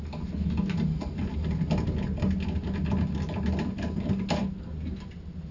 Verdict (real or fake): real